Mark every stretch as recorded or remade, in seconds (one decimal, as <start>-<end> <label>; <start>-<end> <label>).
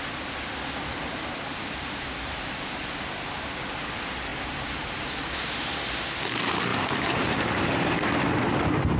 0.0-1.5 recorded; 1.5-3.0 remade; 3.0-4.3 recorded; 4.3-5.3 remade; 5.3-6.7 recorded; 6.7-8.1 remade; 8.1-9.0 recorded